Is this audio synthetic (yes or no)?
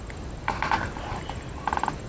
no